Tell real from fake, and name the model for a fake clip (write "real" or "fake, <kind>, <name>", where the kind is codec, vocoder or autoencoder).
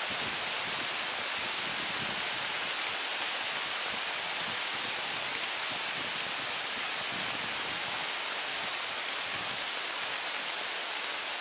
real